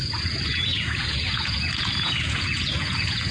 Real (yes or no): no